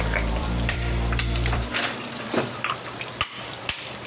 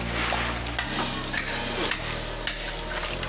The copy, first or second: first